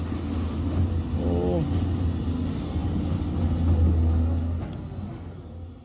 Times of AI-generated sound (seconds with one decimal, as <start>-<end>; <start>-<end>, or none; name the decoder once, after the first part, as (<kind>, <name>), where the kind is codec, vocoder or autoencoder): none